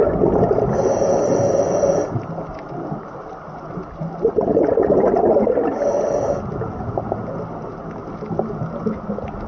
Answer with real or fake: real